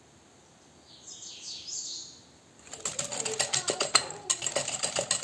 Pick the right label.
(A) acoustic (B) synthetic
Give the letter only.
A